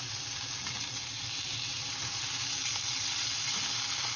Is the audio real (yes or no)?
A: yes